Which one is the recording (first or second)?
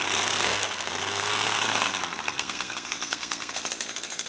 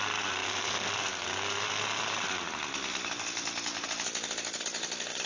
second